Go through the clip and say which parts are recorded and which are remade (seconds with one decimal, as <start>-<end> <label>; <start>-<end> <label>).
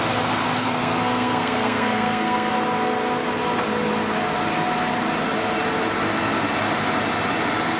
0.0-0.6 recorded; 0.6-2.5 remade; 2.5-7.8 recorded